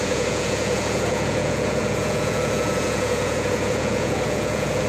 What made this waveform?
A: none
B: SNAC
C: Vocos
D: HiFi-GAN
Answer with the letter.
C